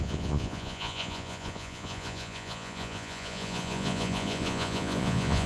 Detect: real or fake fake